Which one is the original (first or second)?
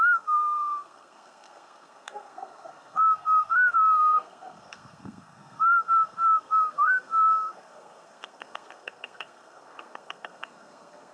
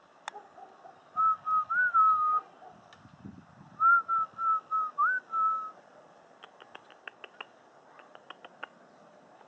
second